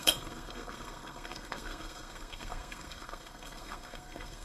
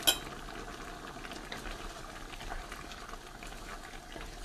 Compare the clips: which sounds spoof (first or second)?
first